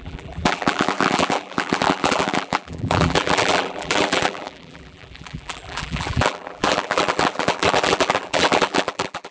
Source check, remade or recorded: remade